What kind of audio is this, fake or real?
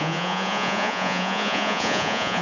fake